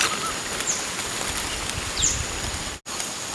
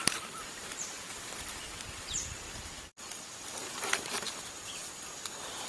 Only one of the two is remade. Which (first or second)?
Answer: second